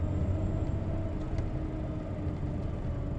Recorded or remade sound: recorded